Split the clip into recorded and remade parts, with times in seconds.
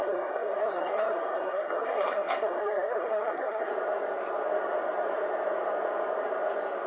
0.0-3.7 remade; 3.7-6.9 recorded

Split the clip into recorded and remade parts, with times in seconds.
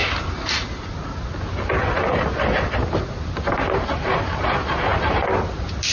0.0-5.9 recorded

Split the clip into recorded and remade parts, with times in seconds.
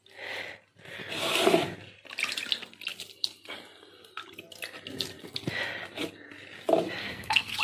0.0-7.0 recorded; 7.0-7.6 remade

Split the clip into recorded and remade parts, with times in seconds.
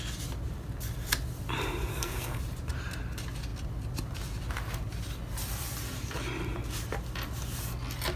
0.0-1.9 recorded; 1.9-2.4 remade; 2.4-8.2 recorded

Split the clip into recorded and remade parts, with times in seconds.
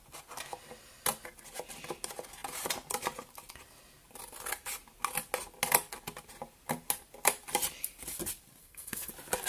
0.0-8.6 recorded; 8.6-9.1 remade; 9.1-9.5 recorded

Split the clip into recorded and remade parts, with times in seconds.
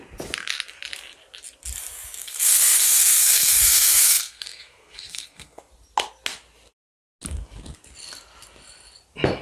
0.0-2.2 recorded; 2.2-5.6 remade; 5.6-9.4 recorded